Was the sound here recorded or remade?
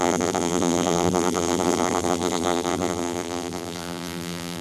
remade